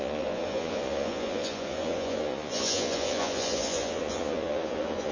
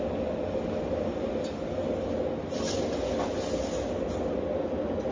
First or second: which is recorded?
second